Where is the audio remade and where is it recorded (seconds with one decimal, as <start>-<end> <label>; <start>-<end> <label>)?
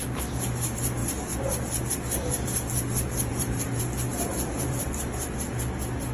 0.0-3.3 recorded; 3.3-3.8 remade; 3.8-4.3 recorded; 4.3-4.8 remade; 4.8-6.1 recorded